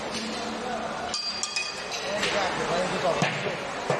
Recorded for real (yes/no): yes